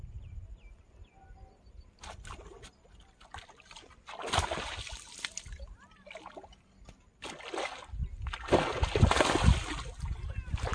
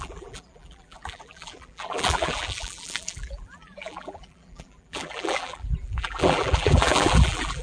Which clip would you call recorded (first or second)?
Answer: first